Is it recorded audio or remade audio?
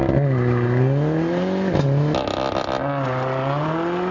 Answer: recorded